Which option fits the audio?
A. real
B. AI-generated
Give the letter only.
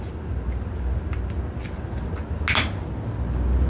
A